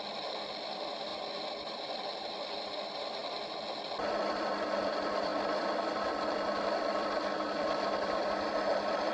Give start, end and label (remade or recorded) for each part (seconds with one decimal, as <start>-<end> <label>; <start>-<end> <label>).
0.0-3.2 remade; 3.2-4.0 recorded; 4.0-9.1 remade